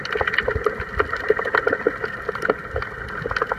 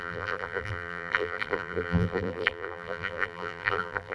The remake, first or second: second